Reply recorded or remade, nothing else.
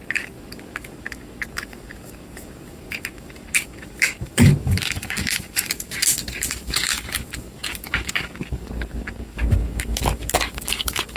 remade